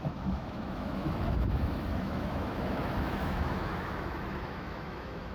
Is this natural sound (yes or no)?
no